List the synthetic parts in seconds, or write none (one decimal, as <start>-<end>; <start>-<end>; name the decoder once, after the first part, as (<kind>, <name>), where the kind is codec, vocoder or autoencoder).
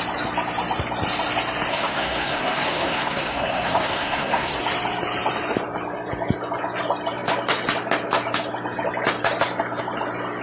1.7-4.6 (codec, SNAC)